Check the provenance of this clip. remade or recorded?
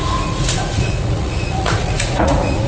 remade